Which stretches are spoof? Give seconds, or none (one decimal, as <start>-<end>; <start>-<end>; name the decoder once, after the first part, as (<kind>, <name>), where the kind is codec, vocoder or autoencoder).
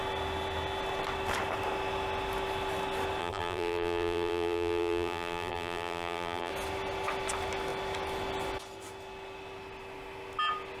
3.2-6.5 (vocoder, BigVGAN v2)